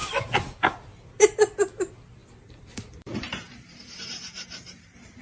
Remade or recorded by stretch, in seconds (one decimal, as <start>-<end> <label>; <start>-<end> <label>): 0.0-1.2 remade; 1.2-2.2 recorded; 2.2-3.2 remade; 3.2-5.2 recorded